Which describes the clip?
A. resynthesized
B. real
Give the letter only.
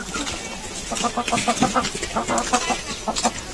B